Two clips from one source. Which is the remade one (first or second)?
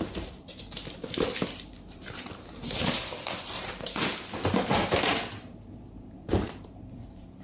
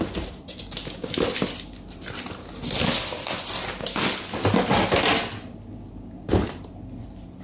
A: first